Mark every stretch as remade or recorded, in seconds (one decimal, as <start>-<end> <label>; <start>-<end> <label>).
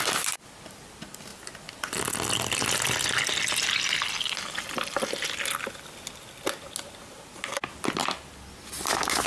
0.0-9.3 recorded